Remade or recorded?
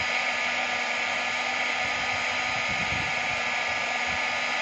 recorded